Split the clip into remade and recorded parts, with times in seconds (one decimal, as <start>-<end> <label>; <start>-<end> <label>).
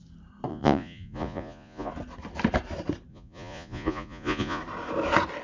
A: 0.0-0.5 recorded; 0.5-1.9 remade; 1.9-3.1 recorded; 3.1-4.6 remade; 4.6-5.4 recorded